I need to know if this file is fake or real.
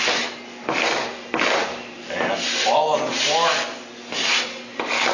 real